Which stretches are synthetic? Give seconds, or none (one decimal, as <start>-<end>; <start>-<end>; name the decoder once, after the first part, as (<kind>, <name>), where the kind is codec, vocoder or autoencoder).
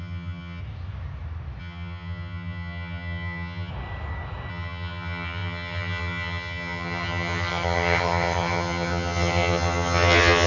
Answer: 0.0-0.6 (vocoder, HiFi-GAN); 1.6-3.7; 4.5-10.5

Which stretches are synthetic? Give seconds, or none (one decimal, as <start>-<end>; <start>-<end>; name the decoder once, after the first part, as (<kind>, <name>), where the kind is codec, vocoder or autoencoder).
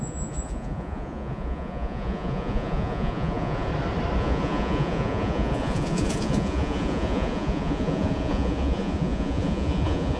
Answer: 0.0-3.7 (vocoder, Vocos); 4.2-10.2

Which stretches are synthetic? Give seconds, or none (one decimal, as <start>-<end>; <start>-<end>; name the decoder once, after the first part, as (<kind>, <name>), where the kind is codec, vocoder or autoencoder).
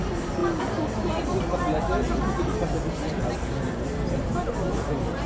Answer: none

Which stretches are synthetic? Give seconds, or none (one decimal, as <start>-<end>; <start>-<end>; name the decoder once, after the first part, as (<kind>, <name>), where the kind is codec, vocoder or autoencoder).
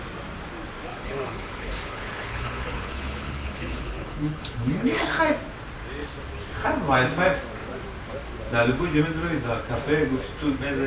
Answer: 0.9-5.2 (codec, HILCodec)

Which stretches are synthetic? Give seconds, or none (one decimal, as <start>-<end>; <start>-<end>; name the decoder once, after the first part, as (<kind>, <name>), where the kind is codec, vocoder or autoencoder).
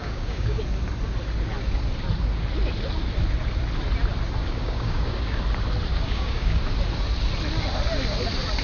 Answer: 0.0-0.6 (codec, DAC); 4.4-5.4; 5.9-6.6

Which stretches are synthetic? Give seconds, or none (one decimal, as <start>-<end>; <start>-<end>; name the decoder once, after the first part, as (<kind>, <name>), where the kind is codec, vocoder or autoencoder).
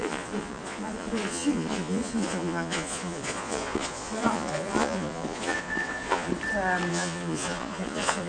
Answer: 0.0-6.3 (vocoder, Vocos); 6.9-8.3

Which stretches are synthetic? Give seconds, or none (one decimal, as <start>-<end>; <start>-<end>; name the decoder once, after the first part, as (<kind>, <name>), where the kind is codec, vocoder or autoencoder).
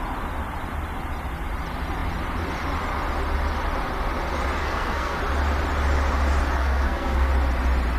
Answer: 4.6-5.2 (codec, SNAC); 6.6-7.3